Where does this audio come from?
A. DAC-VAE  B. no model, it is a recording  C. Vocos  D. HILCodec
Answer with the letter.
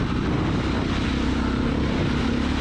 B